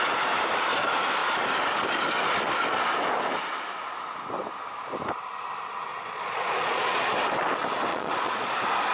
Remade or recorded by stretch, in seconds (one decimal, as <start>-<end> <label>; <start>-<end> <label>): 0.0-5.9 recorded; 5.9-7.0 remade; 7.0-7.9 recorded; 7.9-8.5 remade; 8.5-8.9 recorded